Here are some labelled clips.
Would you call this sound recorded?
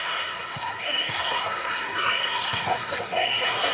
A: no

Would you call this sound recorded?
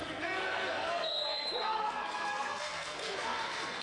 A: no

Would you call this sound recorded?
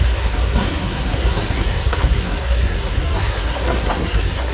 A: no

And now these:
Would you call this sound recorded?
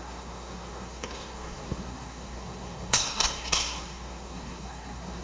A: no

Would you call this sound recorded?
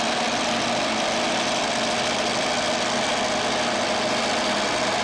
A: yes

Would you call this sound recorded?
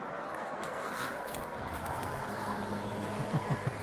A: no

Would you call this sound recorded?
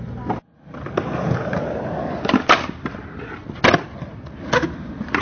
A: yes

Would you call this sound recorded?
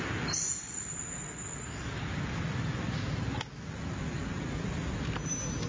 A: yes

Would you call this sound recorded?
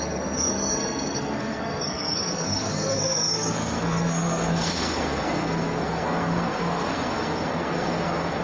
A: no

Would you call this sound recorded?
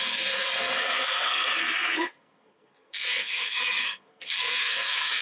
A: no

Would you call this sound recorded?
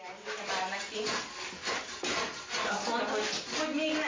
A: yes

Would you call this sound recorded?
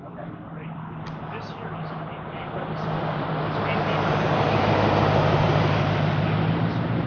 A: yes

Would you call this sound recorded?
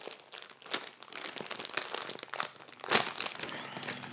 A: yes